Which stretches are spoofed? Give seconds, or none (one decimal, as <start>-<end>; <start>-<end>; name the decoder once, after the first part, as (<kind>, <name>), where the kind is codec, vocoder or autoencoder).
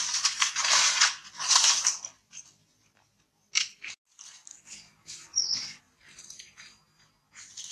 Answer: 4.5-5.8 (codec, DAC)